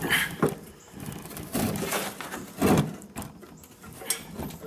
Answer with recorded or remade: recorded